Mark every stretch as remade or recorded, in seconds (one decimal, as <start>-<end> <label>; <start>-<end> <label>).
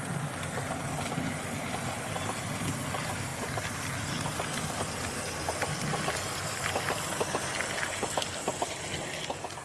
0.0-9.6 recorded